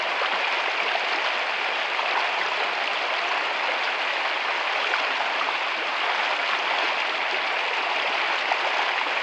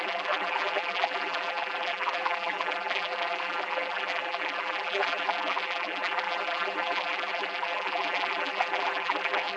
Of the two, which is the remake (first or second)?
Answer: second